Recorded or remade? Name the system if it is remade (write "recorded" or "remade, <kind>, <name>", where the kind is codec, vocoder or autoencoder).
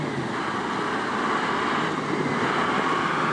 recorded